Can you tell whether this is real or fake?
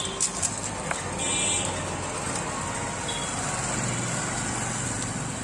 real